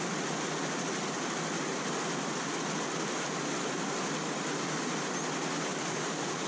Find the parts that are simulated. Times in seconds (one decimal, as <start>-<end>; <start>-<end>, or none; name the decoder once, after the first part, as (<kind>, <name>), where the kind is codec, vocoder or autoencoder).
5.7-6.5 (vocoder, BigVGAN v2)